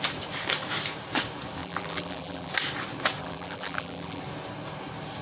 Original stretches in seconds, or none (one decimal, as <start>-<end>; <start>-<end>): 0.0-1.6; 2.5-3.2; 4.2-5.2